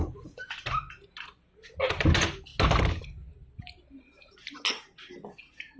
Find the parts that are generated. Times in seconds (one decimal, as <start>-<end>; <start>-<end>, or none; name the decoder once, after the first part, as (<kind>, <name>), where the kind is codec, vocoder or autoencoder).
none